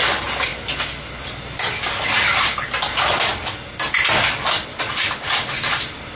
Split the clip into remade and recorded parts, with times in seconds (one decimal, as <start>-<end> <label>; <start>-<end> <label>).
0.0-6.2 recorded